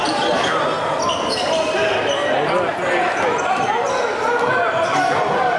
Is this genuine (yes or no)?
yes